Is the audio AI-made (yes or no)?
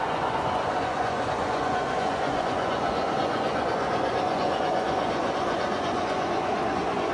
yes